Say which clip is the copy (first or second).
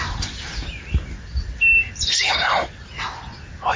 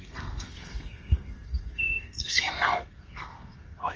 second